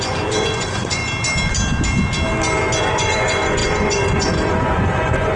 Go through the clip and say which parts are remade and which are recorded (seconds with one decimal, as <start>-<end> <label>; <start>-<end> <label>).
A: 0.0-1.0 remade; 1.0-2.8 recorded; 2.8-5.4 remade